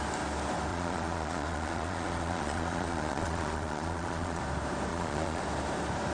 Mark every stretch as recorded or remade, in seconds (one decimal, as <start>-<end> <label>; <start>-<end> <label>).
0.0-0.7 recorded; 0.7-4.4 remade; 4.4-4.9 recorded; 4.9-5.4 remade; 5.4-6.1 recorded